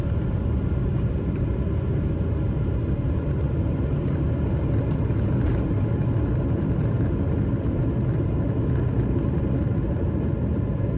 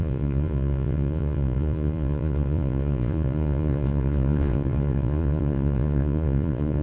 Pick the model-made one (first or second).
second